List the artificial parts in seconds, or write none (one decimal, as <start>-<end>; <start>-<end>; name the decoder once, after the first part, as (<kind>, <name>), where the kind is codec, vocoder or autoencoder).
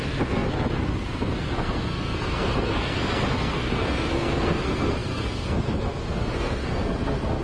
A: 0.0-7.4 (codec, SNAC)